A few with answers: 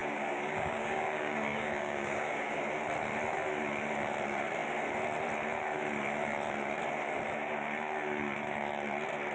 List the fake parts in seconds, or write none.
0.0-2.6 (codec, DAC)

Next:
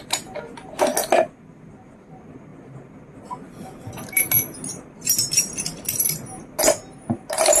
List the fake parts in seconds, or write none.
none

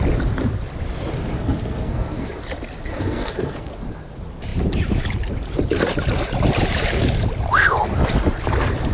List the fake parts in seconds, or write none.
1.3-2.4 (codec, SNAC); 2.9-3.8

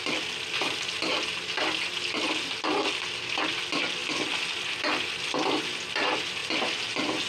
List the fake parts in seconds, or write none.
none

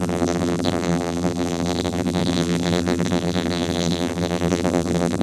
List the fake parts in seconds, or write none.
0.0-5.2 (vocoder, BigVGAN v2)

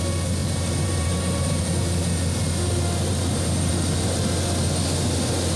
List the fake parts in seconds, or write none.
0.4-1.6 (vocoder, BigVGAN v2); 3.1-3.7